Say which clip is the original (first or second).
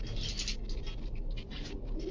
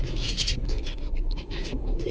first